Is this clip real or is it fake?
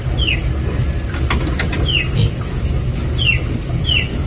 real